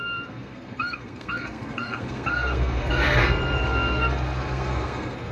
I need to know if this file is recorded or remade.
remade